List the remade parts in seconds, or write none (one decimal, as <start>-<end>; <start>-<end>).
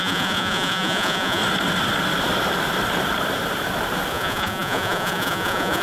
0.0-1.4; 4.1-5.8